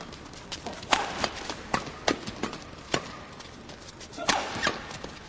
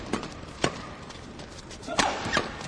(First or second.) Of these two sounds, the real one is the first